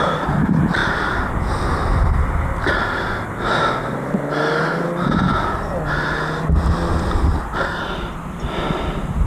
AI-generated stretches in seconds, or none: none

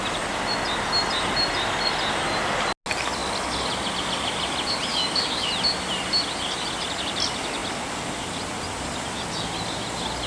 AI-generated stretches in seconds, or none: 4.9-5.5 (codec, DAC)